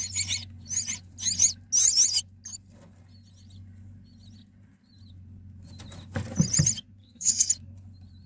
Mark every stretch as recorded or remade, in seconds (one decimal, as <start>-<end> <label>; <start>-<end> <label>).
0.0-7.0 recorded; 7.0-7.5 remade; 7.5-8.3 recorded